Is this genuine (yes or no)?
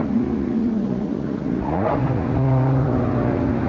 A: no